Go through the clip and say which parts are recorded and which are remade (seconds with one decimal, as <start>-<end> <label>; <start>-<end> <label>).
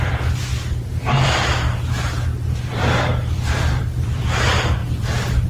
0.0-0.5 remade; 0.5-2.6 recorded; 2.6-4.8 remade; 4.8-5.5 recorded